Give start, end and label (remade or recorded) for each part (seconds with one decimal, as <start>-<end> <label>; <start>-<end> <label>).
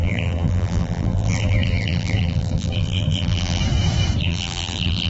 0.0-3.6 remade; 3.6-4.2 recorded; 4.2-5.1 remade